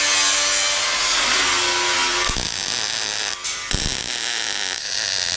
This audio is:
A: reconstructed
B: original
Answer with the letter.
B